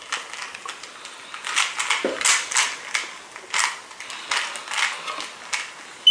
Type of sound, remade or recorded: recorded